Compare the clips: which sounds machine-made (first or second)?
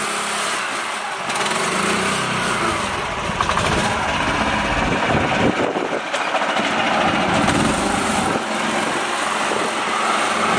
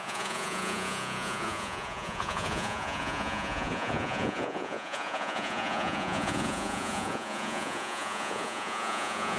second